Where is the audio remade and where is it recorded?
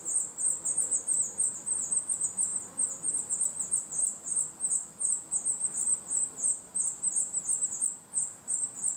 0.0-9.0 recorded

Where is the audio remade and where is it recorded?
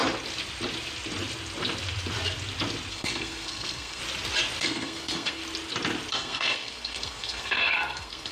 0.0-2.9 recorded; 2.9-4.0 remade; 4.0-4.6 recorded; 4.6-5.4 remade; 5.4-6.1 recorded; 6.1-8.3 remade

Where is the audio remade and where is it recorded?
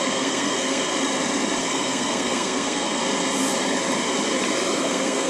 0.0-0.9 remade; 0.9-1.6 recorded; 1.6-3.0 remade; 3.0-4.8 recorded; 4.8-5.3 remade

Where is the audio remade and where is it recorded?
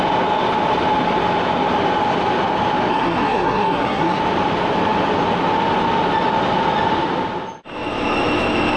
0.0-2.9 recorded; 2.9-4.2 remade; 4.2-8.8 recorded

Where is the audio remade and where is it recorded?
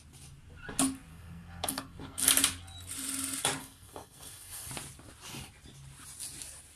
0.0-1.1 recorded; 1.1-2.3 remade; 2.3-3.6 recorded; 3.6-4.7 remade; 4.7-6.8 recorded